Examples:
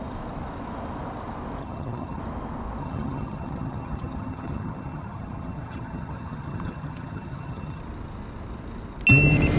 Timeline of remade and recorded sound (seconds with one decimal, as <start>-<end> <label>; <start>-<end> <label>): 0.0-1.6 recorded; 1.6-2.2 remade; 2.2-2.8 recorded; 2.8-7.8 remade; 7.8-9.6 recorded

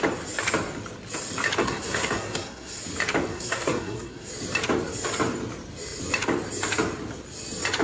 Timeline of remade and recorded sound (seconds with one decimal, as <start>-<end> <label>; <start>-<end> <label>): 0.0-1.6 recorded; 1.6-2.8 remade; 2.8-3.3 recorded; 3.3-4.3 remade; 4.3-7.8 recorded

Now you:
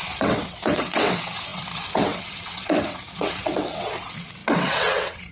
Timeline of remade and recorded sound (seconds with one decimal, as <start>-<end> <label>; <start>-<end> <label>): 0.0-5.3 remade

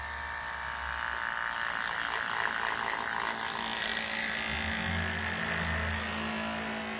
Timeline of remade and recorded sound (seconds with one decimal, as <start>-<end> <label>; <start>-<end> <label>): 0.0-7.0 recorded

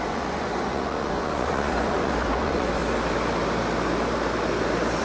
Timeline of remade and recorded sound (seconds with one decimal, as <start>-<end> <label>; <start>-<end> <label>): 0.0-2.8 remade; 2.8-5.0 recorded